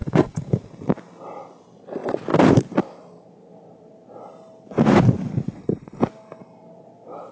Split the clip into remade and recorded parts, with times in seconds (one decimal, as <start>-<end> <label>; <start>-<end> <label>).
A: 0.0-0.6 remade; 0.6-7.3 recorded